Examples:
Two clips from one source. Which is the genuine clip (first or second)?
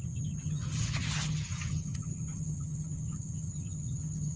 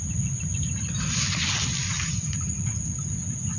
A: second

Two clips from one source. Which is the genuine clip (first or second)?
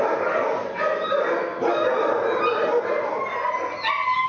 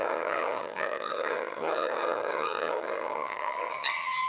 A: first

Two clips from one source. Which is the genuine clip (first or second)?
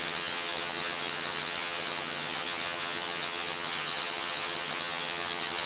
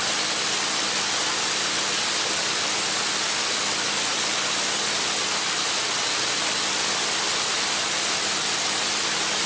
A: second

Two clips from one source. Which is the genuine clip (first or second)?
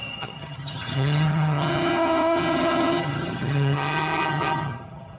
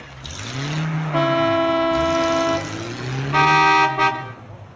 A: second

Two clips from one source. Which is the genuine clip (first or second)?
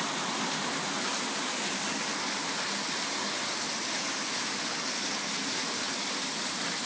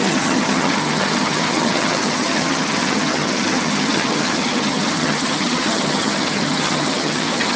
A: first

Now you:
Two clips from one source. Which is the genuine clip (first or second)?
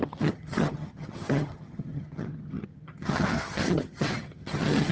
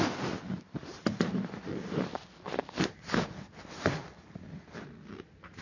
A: second